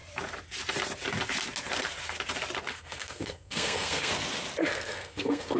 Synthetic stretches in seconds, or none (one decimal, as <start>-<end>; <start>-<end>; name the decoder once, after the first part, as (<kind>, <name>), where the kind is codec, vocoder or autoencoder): 2.7-4.1 (codec, SNAC); 4.6-5.6